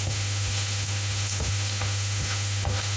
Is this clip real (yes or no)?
no